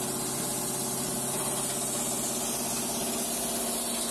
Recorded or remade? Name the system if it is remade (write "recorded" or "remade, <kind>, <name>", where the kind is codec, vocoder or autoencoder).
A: recorded